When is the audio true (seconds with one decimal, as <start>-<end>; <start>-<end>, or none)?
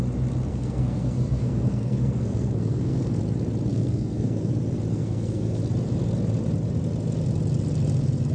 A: 0.0-0.5; 3.2-3.7; 4.5-4.9; 5.6-8.3